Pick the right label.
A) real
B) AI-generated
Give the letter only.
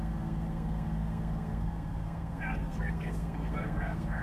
B